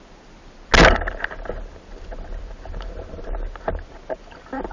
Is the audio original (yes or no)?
yes